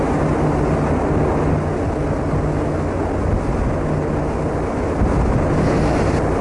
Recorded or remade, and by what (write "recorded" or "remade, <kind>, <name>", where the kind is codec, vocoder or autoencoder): recorded